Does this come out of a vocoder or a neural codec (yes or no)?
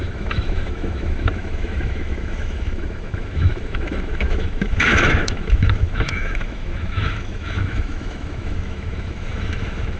yes